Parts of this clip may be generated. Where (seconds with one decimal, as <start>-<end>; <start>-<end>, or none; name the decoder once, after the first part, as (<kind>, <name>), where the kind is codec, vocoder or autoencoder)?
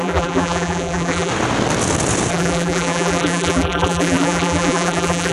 0.0-1.3 (vocoder, BigVGAN v2); 2.3-5.3